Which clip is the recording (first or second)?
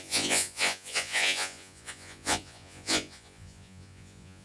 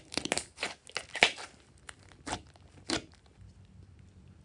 second